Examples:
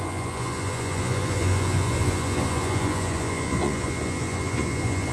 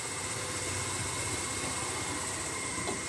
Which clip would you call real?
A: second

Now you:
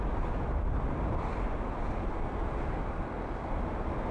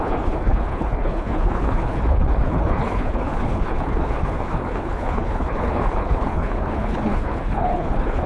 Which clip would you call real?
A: first